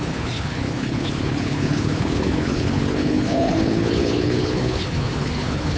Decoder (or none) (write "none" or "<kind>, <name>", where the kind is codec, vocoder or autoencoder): codec, HILCodec